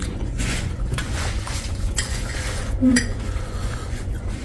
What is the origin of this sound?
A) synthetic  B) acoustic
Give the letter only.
A